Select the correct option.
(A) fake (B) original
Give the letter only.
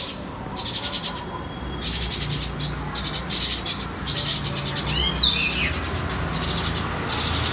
B